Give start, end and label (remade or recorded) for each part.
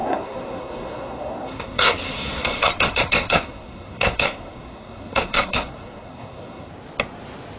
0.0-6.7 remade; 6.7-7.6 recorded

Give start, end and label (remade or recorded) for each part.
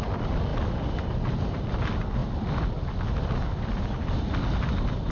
0.0-5.1 recorded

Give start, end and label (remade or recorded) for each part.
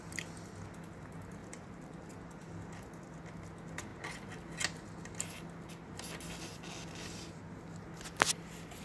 0.0-1.4 recorded; 1.4-2.1 remade; 2.1-8.8 recorded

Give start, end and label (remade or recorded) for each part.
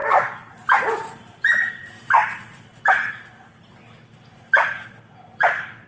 0.0-5.9 recorded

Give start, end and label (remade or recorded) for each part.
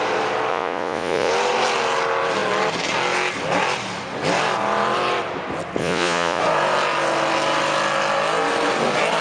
0.0-0.5 recorded; 0.5-1.3 remade; 1.3-5.8 recorded; 5.8-6.4 remade; 6.4-9.2 recorded